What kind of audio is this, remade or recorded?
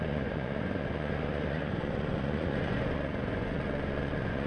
remade